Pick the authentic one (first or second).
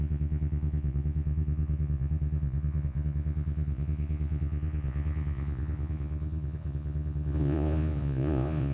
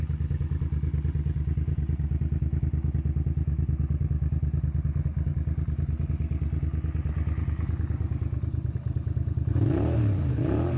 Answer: second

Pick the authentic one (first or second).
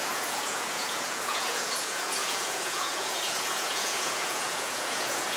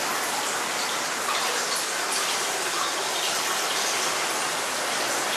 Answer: second